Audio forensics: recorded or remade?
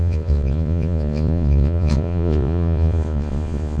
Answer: remade